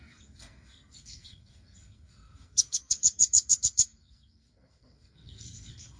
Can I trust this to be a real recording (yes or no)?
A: no